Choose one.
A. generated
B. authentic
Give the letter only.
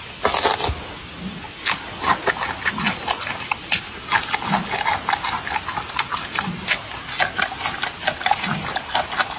B